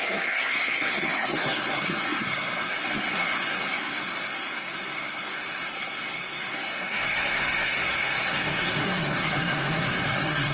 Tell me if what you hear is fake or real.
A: fake